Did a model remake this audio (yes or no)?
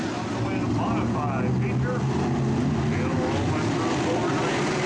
no